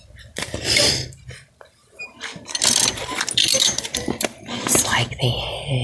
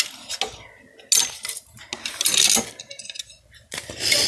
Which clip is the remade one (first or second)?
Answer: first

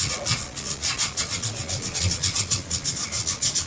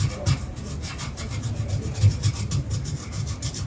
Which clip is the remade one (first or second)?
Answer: first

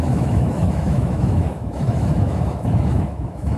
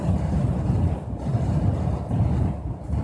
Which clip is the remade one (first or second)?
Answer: first